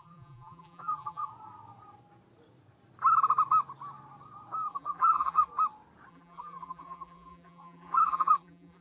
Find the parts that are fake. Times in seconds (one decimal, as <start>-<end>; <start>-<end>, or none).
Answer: 0.0-1.3; 4.7-5.5; 6.1-8.8